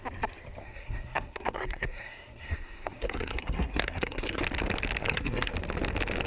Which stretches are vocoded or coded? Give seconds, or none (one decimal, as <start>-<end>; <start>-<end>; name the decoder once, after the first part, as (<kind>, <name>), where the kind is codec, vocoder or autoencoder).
0.6-4.4 (codec, SNAC); 5.0-5.5